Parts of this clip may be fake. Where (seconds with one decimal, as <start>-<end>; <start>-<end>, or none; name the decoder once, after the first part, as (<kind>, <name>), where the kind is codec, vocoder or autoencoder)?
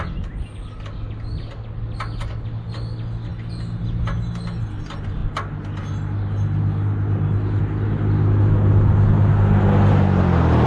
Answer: none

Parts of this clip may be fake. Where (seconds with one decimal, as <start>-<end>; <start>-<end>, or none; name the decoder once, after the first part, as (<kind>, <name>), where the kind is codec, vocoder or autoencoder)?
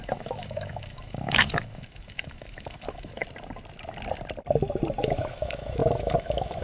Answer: 0.0-3.2 (autoencoder, DAC-VAE); 5.0-6.6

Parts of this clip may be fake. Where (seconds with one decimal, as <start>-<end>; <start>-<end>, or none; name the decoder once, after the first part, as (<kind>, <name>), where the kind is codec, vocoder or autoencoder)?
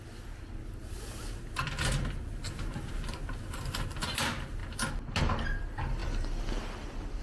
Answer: none